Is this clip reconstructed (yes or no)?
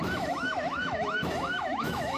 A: yes